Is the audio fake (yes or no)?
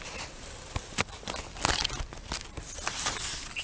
no